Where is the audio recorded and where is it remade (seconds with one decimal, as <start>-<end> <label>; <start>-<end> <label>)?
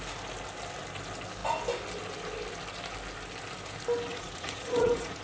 0.0-4.1 recorded; 4.1-5.2 remade